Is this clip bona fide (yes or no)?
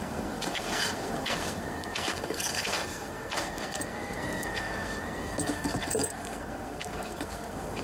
no